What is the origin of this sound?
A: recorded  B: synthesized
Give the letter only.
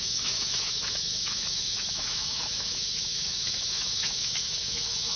B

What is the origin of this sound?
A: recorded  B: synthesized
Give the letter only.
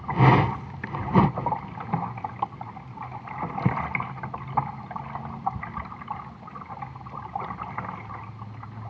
A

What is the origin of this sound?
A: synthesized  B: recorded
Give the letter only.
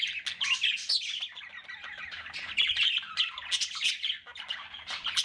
B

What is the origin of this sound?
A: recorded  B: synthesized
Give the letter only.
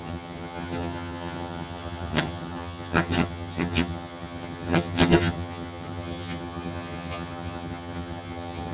B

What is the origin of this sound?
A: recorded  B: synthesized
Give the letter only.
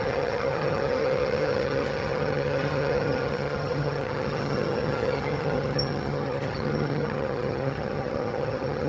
B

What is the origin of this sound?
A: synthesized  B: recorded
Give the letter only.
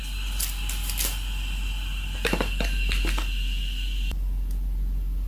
B